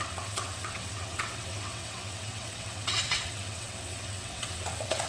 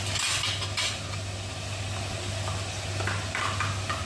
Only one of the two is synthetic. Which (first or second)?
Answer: first